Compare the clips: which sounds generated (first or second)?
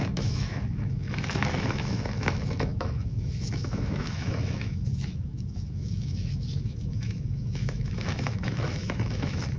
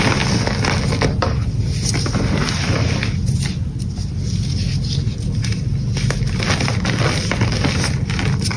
first